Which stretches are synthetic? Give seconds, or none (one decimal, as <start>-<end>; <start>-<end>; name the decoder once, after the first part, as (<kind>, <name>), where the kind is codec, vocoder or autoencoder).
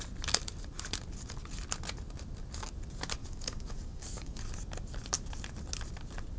3.2-4.4 (codec, DAC)